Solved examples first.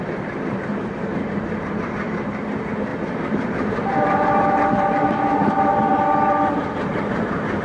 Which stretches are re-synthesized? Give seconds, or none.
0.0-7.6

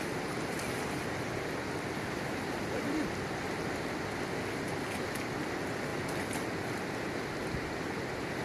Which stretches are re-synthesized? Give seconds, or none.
none

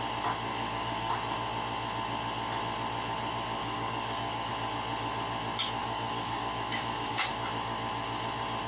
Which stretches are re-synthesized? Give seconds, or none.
0.5-1.1; 3.6-4.5; 5.8-7.3

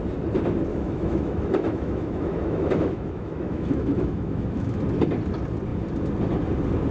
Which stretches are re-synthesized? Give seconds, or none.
0.7-4.8

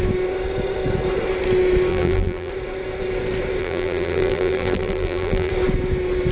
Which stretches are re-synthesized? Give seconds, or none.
1.9-2.5; 3.6-5.5

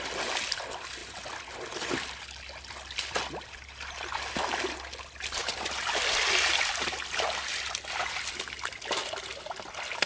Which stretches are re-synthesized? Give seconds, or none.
none